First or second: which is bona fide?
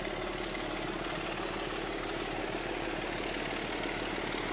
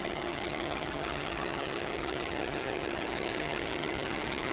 first